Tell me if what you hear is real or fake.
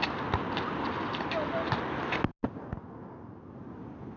real